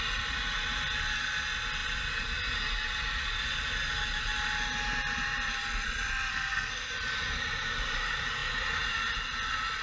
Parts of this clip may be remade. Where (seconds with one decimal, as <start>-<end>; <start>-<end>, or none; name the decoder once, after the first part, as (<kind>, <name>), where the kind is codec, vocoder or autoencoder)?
6.3-6.9 (codec, SNAC)